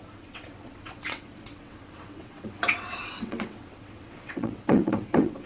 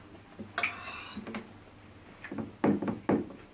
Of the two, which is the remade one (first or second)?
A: first